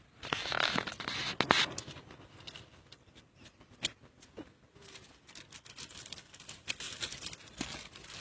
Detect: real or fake real